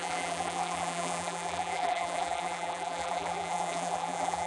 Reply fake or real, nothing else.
fake